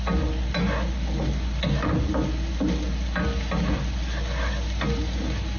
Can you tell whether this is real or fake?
real